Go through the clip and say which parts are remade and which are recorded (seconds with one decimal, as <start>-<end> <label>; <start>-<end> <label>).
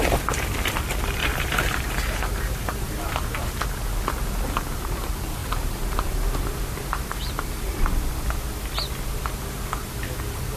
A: 0.0-1.2 recorded; 1.2-3.6 remade; 3.6-5.4 recorded; 5.4-8.0 remade; 8.0-10.6 recorded